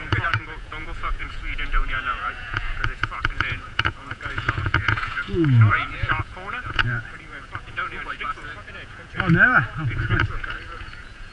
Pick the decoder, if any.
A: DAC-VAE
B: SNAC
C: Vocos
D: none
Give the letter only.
C